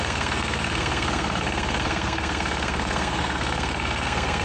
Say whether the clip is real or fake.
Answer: fake